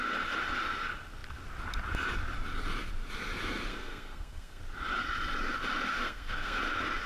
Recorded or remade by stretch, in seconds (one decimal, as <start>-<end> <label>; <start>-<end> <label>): 0.0-3.7 recorded; 3.7-4.6 remade; 4.6-5.9 recorded; 5.9-6.6 remade; 6.6-7.1 recorded